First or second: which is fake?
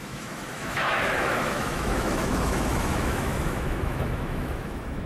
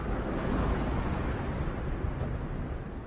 first